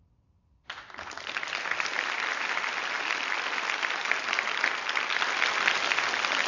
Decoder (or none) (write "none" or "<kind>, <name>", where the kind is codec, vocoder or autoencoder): none